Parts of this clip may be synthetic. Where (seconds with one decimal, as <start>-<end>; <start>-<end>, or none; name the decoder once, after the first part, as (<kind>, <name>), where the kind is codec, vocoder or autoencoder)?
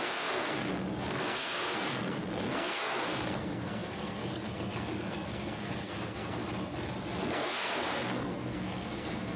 0.0-6.4 (codec, SNAC); 7.2-9.4